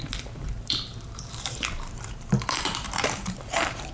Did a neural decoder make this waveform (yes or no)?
yes